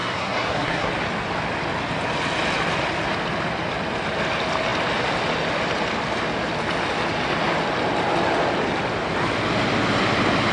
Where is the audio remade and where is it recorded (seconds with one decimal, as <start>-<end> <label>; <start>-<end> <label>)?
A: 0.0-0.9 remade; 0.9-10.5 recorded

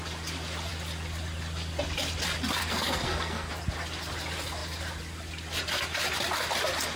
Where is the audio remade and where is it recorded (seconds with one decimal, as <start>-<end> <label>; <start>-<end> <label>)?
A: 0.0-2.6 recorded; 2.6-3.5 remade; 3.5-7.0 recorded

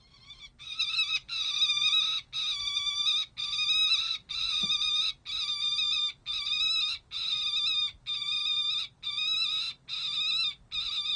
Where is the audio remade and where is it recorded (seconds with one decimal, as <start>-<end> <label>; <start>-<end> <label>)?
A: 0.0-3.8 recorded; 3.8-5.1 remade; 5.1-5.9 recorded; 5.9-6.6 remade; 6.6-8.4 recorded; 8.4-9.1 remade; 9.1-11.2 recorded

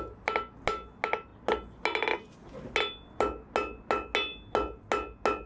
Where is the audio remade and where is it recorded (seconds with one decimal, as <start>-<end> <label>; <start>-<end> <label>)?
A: 0.0-5.5 recorded

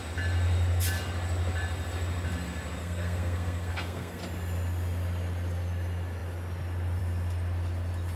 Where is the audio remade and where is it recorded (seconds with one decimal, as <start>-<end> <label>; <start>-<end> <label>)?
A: 0.0-2.8 recorded; 2.8-4.2 remade; 4.2-8.2 recorded

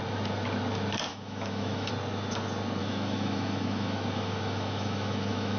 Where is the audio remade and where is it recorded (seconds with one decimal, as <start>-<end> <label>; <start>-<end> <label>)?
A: 0.0-1.1 recorded; 1.1-1.9 remade; 1.9-2.8 recorded; 2.8-5.6 remade

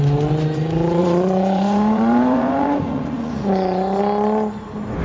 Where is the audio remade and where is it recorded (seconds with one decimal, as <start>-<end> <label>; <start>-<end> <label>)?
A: 0.0-1.0 recorded; 1.0-4.0 remade; 4.0-5.0 recorded

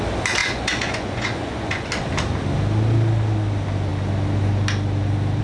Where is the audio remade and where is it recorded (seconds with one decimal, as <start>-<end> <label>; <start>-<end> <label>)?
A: 0.0-0.4 recorded; 0.4-1.9 remade; 1.9-5.4 recorded